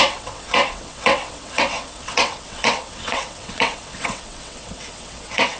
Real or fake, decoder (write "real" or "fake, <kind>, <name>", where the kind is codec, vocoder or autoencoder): fake, vocoder, WaveNeXt